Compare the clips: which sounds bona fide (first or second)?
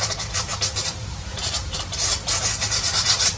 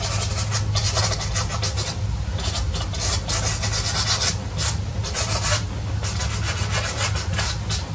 second